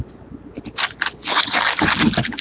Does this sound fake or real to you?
real